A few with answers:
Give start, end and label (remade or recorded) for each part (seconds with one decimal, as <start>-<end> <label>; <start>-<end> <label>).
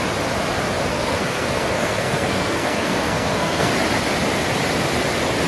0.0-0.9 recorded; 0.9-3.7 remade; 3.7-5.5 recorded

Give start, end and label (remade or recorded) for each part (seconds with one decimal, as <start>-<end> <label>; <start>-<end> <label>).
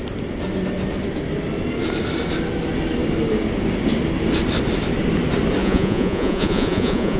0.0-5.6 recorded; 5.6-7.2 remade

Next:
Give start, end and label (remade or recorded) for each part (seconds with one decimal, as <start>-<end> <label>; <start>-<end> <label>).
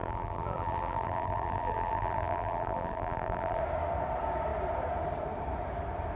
0.0-3.6 remade; 3.6-6.2 recorded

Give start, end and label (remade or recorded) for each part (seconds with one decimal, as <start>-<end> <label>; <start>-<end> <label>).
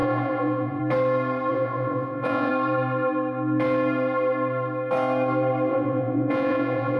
0.0-0.8 remade; 0.8-1.5 recorded; 1.5-2.5 remade; 2.5-5.7 recorded; 5.7-7.0 remade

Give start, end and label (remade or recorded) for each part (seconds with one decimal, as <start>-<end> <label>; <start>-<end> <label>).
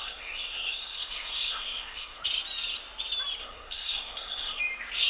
0.0-2.2 remade; 2.2-3.4 recorded; 3.4-4.6 remade; 4.6-5.1 recorded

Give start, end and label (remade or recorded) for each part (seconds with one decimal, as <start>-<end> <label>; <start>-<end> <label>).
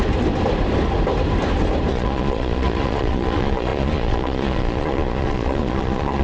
0.0-1.9 recorded; 1.9-6.2 remade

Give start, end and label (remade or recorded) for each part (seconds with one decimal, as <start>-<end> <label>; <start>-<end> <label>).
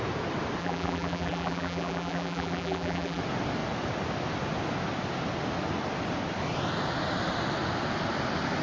0.0-0.6 recorded; 0.6-3.2 remade; 3.2-8.6 recorded